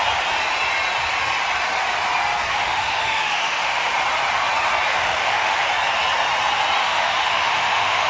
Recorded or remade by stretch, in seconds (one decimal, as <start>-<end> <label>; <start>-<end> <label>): 0.0-2.5 recorded; 2.5-3.8 remade; 3.8-4.9 recorded; 4.9-5.7 remade; 5.7-6.8 recorded; 6.8-8.1 remade